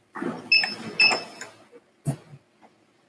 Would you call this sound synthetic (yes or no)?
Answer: no